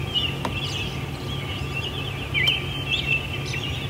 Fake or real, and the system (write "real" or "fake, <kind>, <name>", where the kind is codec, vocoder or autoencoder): real